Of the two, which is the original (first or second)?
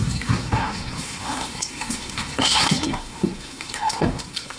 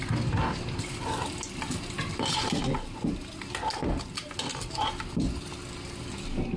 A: second